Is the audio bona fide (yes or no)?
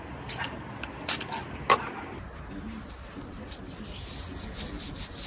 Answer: yes